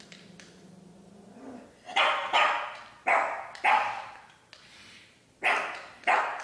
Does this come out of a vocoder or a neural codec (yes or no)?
no